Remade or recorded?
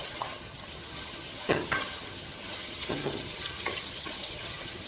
remade